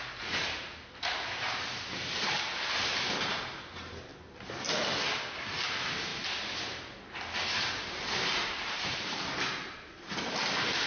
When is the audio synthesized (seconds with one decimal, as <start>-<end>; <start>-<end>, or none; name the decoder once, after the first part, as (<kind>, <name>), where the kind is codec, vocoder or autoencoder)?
0.0-4.1 (vocoder, BigVGAN v2); 5.4-6.1; 7.9-10.9